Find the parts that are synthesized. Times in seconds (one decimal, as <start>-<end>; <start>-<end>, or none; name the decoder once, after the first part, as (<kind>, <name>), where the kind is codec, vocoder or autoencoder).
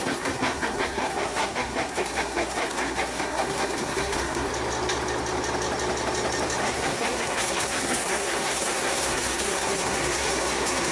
0.0-4.5 (codec, SNAC); 6.6-10.9